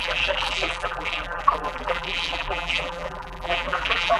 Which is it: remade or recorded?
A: remade